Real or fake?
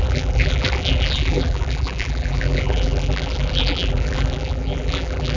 fake